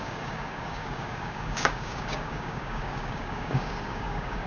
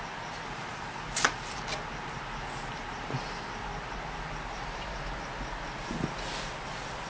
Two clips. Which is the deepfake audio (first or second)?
first